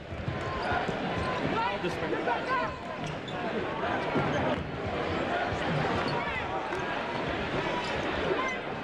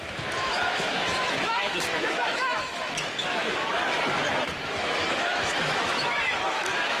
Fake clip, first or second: second